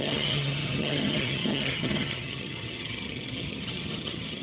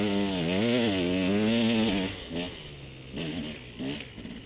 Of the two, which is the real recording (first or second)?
second